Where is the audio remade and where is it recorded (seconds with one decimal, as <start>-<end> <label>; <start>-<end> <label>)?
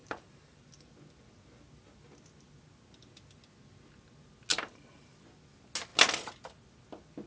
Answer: 0.0-0.7 remade; 0.7-4.5 recorded; 4.5-5.2 remade; 5.2-7.3 recorded